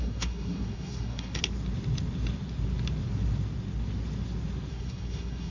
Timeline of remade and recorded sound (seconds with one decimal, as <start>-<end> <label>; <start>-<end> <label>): 0.0-1.4 remade; 1.4-4.7 recorded; 4.7-5.5 remade